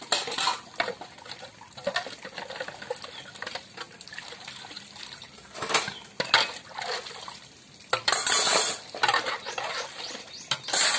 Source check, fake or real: real